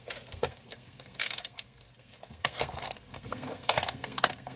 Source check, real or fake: fake